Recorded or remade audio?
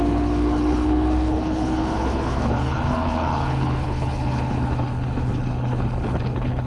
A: remade